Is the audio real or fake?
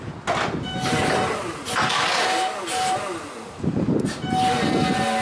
real